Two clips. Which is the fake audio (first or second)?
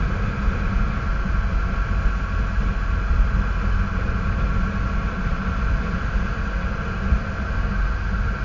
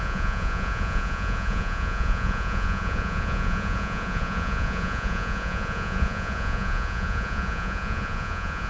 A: second